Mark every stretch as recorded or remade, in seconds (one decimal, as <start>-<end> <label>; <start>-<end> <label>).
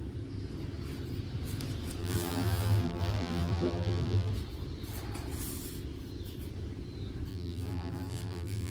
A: 0.0-2.0 recorded; 2.0-4.3 remade; 4.3-7.3 recorded; 7.3-8.7 remade